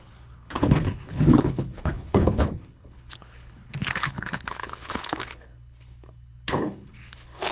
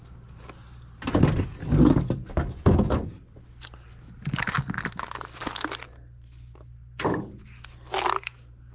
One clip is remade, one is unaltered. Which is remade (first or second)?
first